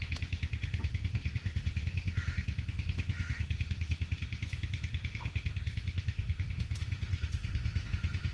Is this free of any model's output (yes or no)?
no